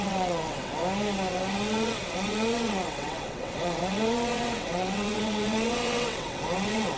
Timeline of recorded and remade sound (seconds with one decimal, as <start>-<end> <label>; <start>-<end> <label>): 0.0-0.8 remade; 0.8-1.3 recorded; 1.3-7.0 remade